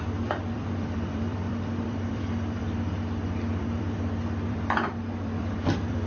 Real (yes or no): no